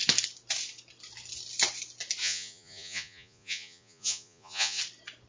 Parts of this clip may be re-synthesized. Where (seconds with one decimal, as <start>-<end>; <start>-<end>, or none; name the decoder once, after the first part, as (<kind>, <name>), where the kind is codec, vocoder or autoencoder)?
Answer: 2.2-4.8 (vocoder, Vocos)